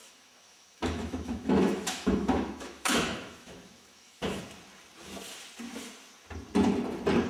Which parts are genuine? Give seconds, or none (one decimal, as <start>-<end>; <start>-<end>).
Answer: 4.4-7.3